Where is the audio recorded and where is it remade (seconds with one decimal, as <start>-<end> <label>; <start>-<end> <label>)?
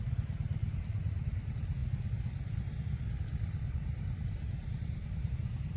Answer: 0.0-5.8 recorded